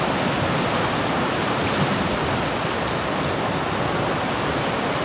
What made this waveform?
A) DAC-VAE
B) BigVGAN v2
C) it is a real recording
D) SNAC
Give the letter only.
C